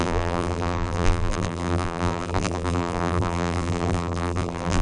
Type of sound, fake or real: fake